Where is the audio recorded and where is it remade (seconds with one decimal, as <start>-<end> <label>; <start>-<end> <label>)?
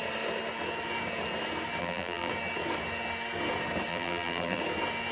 0.0-1.8 recorded; 1.8-2.3 remade; 2.3-3.9 recorded; 3.9-4.6 remade; 4.6-5.1 recorded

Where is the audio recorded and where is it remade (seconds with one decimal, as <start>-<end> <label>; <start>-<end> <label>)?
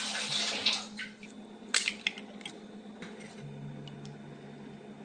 0.0-5.0 recorded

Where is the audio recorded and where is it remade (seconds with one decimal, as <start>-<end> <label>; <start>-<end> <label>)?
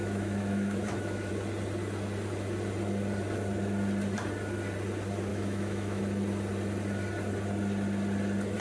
0.0-1.3 remade; 1.3-5.3 recorded; 5.3-6.0 remade; 6.0-8.6 recorded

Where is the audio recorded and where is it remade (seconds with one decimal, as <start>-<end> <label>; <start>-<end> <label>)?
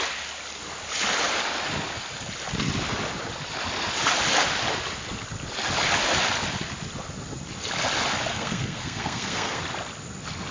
0.0-8.3 recorded; 8.3-9.6 remade; 9.6-10.5 recorded